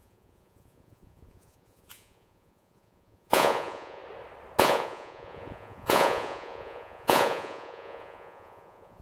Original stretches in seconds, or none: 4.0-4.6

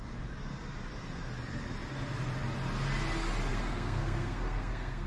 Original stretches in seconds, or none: 0.0-3.5

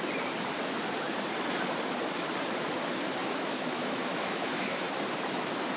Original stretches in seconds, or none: 0.0-3.2; 4.8-5.8

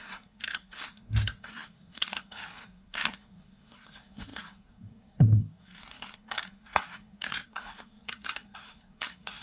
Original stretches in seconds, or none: none

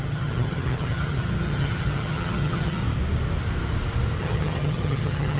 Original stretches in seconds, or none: 2.8-4.2

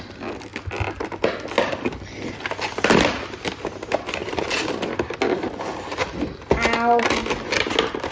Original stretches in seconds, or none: 0.0-8.1